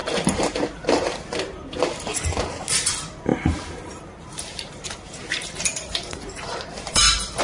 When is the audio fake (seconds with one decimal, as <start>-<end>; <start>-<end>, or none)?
3.3-7.4